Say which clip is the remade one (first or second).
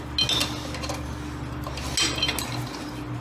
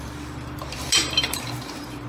second